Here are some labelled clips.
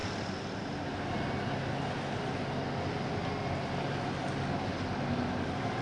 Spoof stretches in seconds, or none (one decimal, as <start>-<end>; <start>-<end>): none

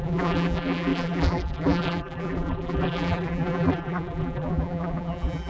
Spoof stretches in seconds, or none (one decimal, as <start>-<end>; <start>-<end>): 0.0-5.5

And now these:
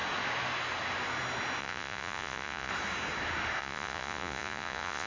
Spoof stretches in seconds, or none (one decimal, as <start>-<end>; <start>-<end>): 1.6-2.7; 3.6-5.1

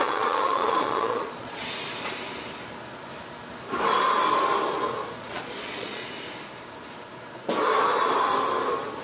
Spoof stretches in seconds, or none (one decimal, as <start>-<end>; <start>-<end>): 0.0-1.6; 5.2-6.0

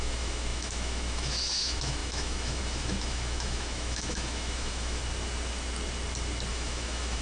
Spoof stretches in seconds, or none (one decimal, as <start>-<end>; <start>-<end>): 0.0-5.0; 6.5-7.2

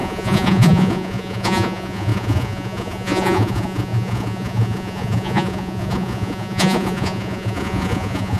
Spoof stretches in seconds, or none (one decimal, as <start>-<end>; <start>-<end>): 0.0-8.4

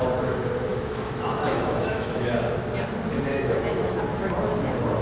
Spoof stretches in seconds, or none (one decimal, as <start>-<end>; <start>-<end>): 0.7-2.3; 3.3-4.0

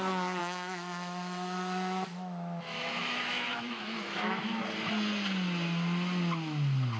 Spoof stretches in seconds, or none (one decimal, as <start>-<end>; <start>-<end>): 0.4-4.6